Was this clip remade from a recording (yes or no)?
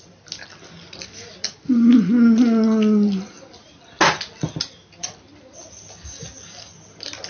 no